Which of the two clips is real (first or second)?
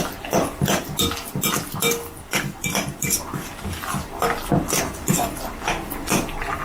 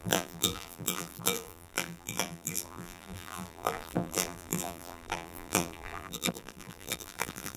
first